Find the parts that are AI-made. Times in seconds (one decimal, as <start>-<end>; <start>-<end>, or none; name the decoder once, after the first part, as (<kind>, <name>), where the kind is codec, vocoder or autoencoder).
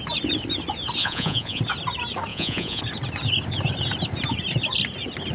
1.0-1.6 (vocoder, Vocos); 2.3-2.8